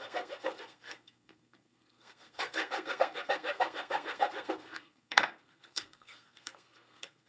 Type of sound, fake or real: fake